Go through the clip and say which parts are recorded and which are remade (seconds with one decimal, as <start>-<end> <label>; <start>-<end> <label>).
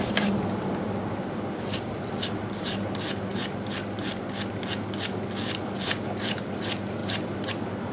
0.0-7.9 recorded